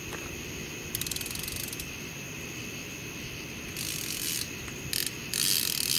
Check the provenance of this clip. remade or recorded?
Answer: recorded